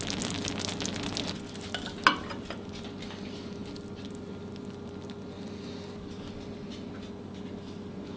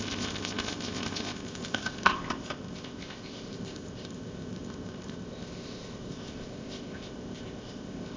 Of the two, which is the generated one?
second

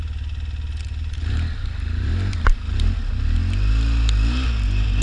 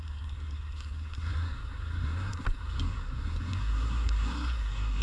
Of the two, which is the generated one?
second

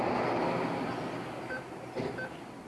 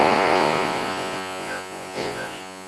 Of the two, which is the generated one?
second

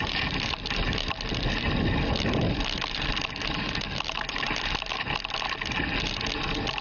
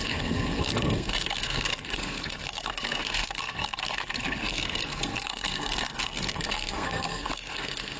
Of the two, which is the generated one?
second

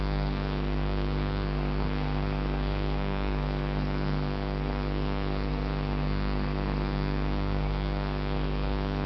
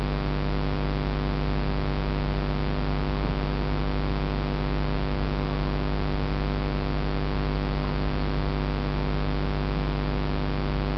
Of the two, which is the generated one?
first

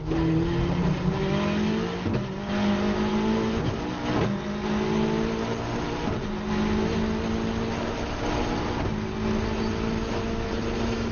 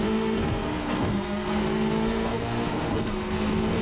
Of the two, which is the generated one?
second